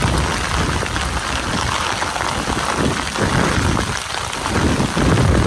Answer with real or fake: real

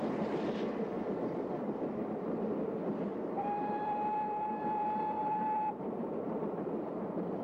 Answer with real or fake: fake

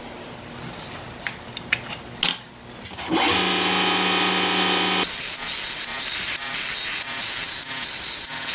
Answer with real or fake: real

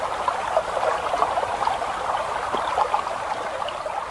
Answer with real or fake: fake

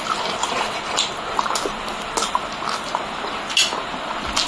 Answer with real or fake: real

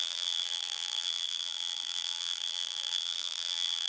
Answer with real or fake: fake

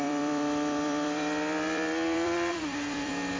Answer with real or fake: fake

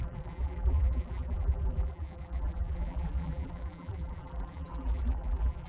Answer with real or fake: fake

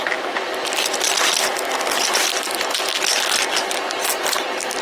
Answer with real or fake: real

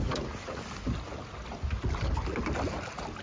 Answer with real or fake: real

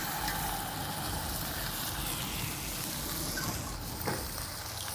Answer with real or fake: real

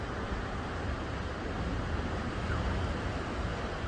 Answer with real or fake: fake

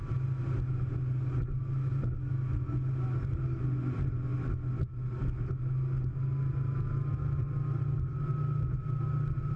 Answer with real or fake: real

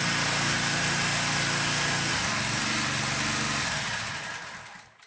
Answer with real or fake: real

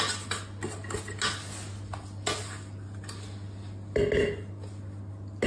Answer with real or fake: real